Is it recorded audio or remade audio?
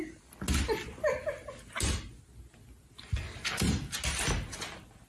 recorded